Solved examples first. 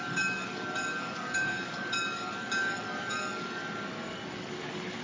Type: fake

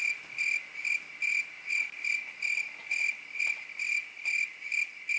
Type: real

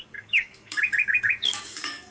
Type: fake